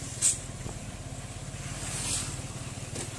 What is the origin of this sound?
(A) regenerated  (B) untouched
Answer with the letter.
B